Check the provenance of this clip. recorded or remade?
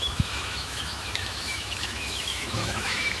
remade